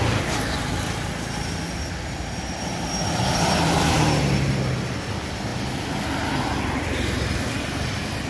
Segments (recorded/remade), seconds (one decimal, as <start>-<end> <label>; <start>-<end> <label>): 0.0-8.3 recorded